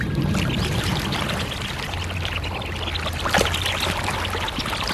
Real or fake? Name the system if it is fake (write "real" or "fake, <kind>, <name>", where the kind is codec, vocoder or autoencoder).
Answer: fake, vocoder, BigVGAN v2